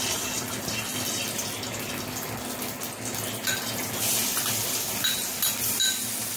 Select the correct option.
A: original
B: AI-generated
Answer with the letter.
A